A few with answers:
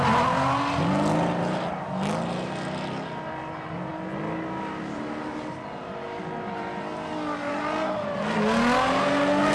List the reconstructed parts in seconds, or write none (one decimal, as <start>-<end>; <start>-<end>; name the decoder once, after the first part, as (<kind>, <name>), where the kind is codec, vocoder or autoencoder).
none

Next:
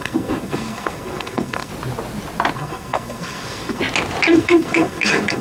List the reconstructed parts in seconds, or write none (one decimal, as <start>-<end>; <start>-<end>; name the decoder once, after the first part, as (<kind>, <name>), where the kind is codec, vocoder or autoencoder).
0.0-1.7 (codec, SNAC); 2.5-3.8; 4.3-5.4

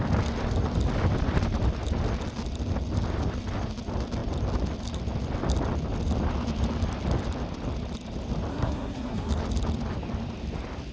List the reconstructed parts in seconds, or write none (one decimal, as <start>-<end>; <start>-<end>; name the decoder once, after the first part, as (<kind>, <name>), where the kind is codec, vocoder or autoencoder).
8.5-9.3 (codec, SNAC)